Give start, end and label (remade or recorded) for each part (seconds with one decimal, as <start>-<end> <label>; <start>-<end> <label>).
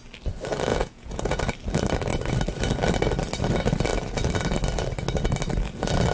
0.0-0.7 recorded; 0.7-1.4 remade; 1.4-6.1 recorded